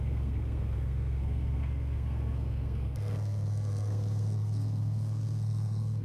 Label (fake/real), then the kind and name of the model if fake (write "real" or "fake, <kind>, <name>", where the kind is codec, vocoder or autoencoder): fake, codec, SNAC